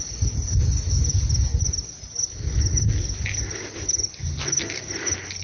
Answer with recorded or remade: recorded